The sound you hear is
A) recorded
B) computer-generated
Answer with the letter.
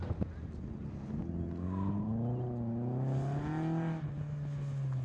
A